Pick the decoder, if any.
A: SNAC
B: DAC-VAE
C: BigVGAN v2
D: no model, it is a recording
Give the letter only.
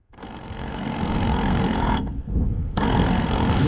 A